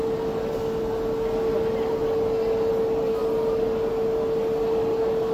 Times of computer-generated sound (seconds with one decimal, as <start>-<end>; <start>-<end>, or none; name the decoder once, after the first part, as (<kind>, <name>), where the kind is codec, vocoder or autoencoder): none